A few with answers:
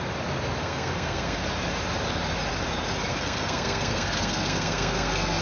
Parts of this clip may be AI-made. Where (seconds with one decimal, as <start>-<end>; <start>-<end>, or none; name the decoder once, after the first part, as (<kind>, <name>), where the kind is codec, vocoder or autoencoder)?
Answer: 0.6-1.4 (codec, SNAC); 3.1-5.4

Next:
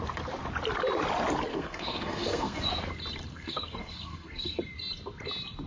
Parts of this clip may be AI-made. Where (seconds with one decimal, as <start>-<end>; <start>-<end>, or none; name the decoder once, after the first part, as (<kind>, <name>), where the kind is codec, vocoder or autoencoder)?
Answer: 1.5-2.9 (codec, SNAC); 3.3-4.6

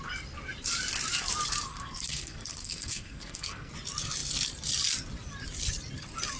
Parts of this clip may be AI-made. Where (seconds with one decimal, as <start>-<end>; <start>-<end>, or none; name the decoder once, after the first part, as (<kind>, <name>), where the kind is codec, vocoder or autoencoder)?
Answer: 1.7-3.7 (codec, SNAC)